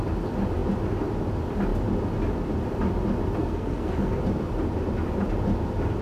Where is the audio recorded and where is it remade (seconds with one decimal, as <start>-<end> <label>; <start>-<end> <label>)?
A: 0.0-3.4 recorded; 3.4-4.2 remade; 4.2-6.0 recorded